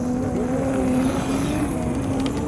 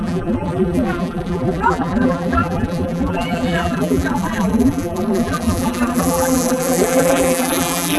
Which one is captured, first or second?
first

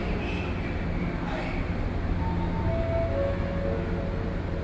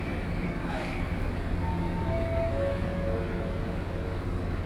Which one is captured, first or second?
first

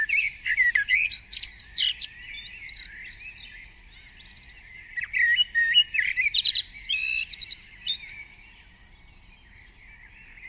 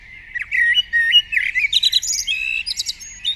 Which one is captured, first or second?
second